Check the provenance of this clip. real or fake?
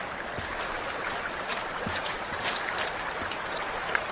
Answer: real